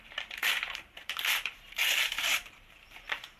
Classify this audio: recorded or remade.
remade